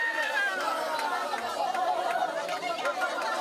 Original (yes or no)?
yes